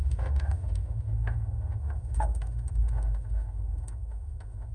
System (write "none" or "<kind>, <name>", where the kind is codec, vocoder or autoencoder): autoencoder, DAC-VAE